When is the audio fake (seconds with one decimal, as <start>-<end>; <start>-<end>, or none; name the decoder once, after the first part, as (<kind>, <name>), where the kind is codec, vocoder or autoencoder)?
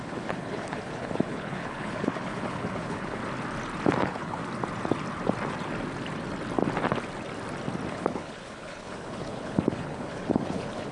0.0-3.2 (codec, HILCodec); 4.0-4.4; 7.9-10.9